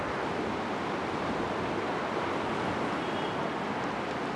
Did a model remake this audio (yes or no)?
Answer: no